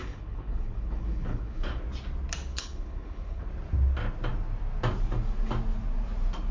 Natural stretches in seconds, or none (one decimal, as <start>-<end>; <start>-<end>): 1.8-2.5; 3.5-6.5

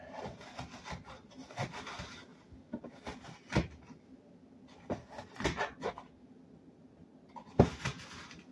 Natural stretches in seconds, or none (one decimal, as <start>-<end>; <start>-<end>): 0.0-8.5

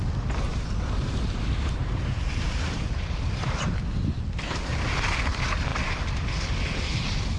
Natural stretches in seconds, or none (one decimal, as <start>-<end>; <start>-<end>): 0.0-0.5; 3.7-7.4